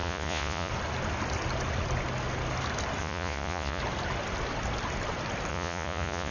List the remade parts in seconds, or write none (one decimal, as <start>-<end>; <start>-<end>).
0.0-0.7; 3.0-3.8; 5.5-6.3